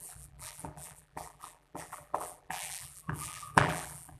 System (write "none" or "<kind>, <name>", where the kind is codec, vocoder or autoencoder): vocoder, BigVGAN v2